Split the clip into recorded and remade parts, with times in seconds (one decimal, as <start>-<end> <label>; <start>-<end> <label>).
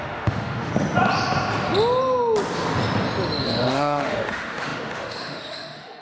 0.0-0.7 remade; 0.7-3.4 recorded; 3.4-6.0 remade